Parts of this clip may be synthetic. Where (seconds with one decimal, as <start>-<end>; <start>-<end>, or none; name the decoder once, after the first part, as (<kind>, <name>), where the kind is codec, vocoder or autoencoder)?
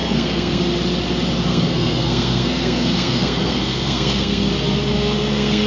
0.0-0.6 (codec, SNAC); 1.5-4.5; 4.9-5.7